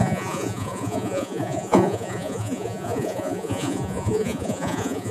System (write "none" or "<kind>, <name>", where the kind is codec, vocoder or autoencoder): vocoder, Vocos